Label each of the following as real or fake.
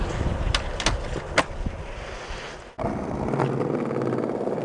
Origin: real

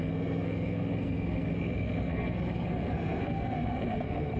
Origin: fake